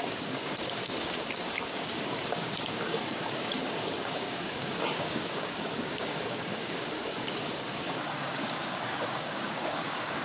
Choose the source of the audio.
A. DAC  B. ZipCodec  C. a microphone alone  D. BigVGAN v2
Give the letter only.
A